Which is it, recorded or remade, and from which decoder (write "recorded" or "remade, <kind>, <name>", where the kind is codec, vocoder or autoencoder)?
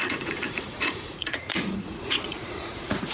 remade, vocoder, Vocos